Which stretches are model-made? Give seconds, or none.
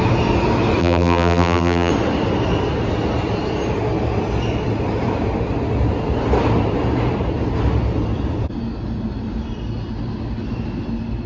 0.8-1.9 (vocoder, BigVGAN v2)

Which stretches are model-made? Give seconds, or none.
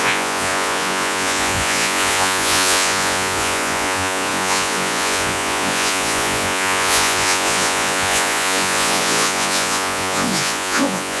0.0-11.2 (vocoder, Vocos)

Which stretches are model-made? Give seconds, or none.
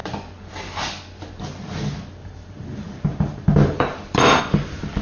2.2-4.4 (vocoder, BigVGAN v2)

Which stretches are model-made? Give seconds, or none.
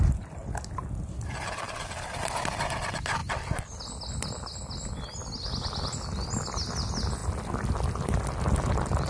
none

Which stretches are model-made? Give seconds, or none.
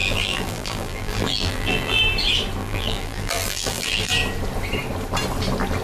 0.0-2.0 (vocoder, BigVGAN v2); 2.6-4.1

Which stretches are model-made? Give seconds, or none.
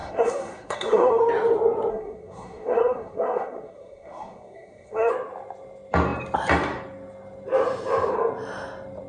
0.0-1.2 (codec, SNAC); 1.9-5.1